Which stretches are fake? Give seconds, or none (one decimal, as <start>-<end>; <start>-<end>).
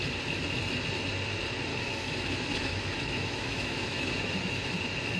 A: 1.7-4.8